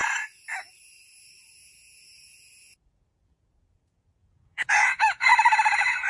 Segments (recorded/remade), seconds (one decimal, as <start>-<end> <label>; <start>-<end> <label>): 0.0-1.6 recorded; 1.6-5.3 remade; 5.3-6.1 recorded